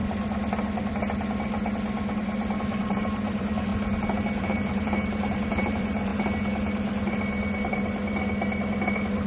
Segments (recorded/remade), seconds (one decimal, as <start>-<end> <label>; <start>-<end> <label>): 0.0-2.6 recorded; 2.6-3.7 remade; 3.7-4.4 recorded; 4.4-6.1 remade; 6.1-9.3 recorded